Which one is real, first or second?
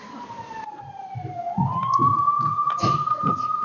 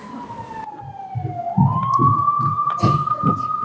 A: second